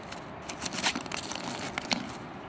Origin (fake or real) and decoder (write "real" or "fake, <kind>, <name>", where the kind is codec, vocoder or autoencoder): real